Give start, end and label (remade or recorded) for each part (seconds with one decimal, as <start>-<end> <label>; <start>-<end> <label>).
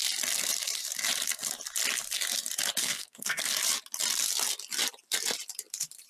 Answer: 0.0-2.8 recorded; 2.8-3.5 remade; 3.5-6.1 recorded